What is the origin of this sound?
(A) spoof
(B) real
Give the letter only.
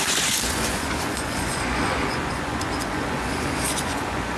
A